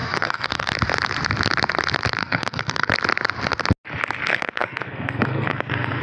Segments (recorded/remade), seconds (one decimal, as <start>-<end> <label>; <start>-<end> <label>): 0.0-0.7 remade; 0.7-2.2 recorded; 2.2-2.9 remade; 2.9-4.3 recorded; 4.3-6.0 remade